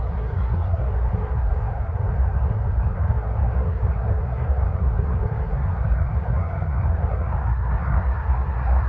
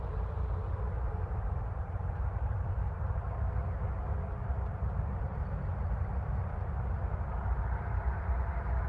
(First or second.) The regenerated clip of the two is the first